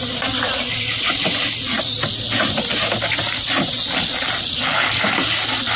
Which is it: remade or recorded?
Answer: recorded